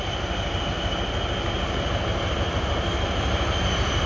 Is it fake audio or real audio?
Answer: real